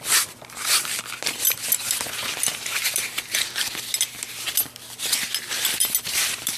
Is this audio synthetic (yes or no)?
no